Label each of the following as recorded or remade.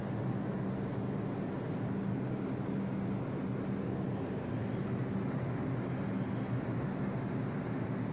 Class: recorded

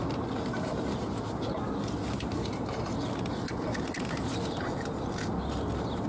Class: recorded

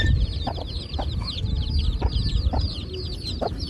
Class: remade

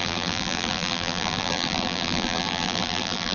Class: remade